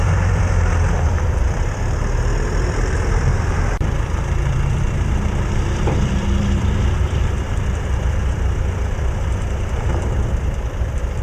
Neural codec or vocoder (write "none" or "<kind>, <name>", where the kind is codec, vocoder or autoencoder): vocoder, BigVGAN v2